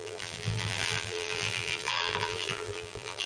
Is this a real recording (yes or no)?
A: no